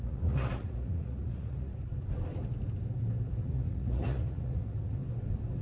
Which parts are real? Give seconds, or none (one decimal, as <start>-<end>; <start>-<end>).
1.7-3.4; 5.0-5.6